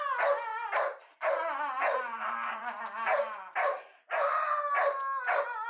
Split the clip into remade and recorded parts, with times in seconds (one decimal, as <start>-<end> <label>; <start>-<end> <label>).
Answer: 0.0-5.7 recorded